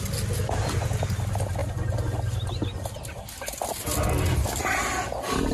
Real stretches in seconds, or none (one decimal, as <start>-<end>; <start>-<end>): 0.0-5.5